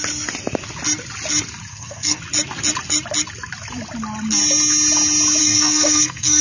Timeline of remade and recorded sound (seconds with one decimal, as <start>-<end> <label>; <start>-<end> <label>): 0.0-1.7 recorded; 1.7-2.2 remade; 2.2-5.4 recorded; 5.4-6.4 remade